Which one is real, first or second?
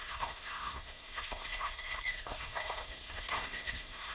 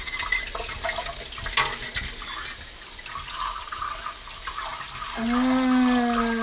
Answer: second